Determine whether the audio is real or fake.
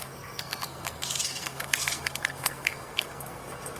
fake